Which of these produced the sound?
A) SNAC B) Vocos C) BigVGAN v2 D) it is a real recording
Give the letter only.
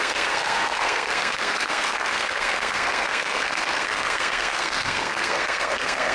A